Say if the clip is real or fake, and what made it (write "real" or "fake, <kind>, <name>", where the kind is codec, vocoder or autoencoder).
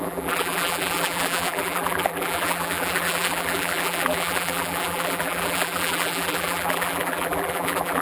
fake, vocoder, BigVGAN v2